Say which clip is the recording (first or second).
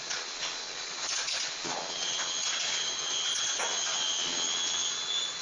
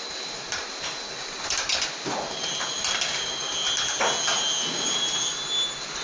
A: second